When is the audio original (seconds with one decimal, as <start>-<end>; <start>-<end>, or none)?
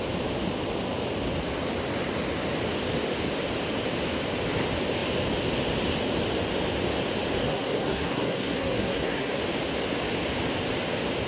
0.0-7.4; 9.4-11.3